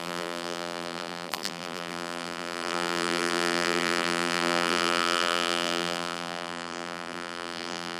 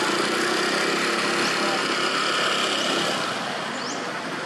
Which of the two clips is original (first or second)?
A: second